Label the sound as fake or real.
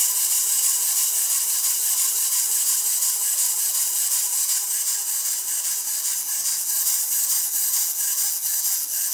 real